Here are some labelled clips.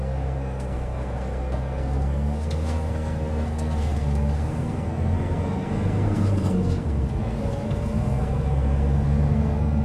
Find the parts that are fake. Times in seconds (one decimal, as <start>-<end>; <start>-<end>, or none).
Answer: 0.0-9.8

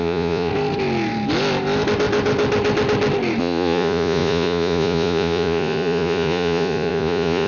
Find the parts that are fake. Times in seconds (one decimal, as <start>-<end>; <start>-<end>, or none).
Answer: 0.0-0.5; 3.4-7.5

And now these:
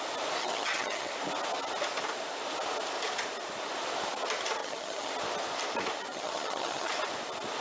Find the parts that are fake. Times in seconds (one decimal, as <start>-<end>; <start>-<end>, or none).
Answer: 0.4-1.1; 4.6-5.1; 6.1-6.9

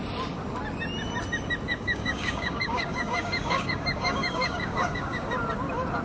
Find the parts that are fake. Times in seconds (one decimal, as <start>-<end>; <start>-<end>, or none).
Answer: 1.7-5.3

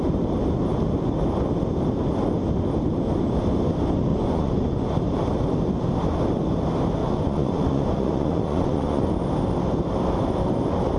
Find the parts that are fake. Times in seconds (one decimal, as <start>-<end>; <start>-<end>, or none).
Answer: 4.1-4.9; 7.0-9.1